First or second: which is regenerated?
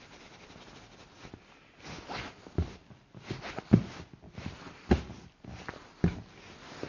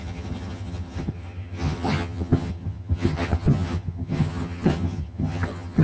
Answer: second